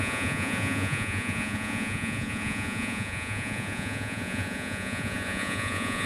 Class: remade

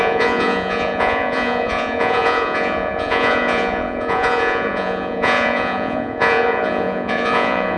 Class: remade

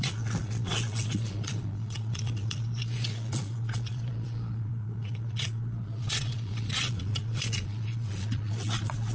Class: remade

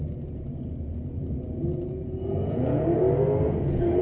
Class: remade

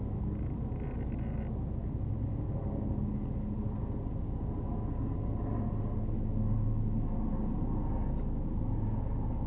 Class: recorded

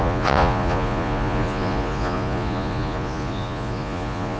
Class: remade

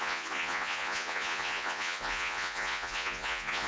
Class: remade